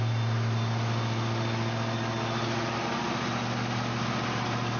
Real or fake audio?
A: real